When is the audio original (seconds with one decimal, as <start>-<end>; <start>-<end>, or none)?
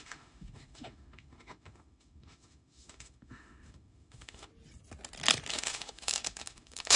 4.5-5.5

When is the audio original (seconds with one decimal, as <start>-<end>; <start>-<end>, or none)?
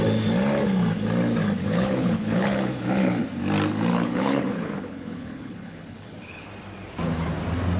0.0-1.6; 3.2-3.9; 6.5-7.8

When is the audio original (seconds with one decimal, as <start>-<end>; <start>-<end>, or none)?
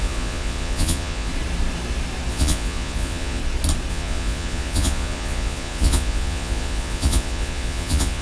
1.3-2.3; 3.4-3.9